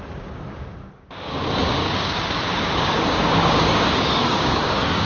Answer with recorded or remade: remade